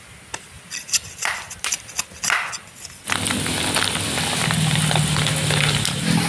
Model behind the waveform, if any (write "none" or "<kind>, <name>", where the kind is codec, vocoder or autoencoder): none